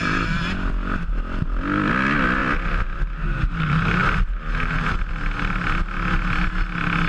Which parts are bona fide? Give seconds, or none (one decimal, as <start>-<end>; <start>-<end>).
0.0-7.1